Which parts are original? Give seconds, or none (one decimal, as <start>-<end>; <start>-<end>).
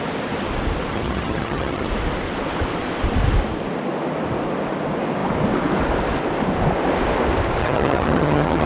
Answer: 0.0-0.9; 1.9-7.6